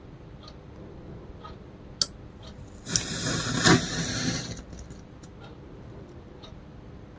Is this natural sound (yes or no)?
yes